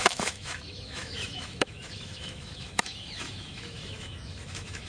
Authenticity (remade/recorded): remade